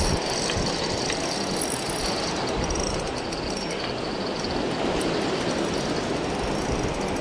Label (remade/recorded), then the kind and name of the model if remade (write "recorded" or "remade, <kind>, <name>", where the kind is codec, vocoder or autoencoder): recorded